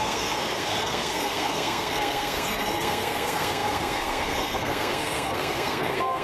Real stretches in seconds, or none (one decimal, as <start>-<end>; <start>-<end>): none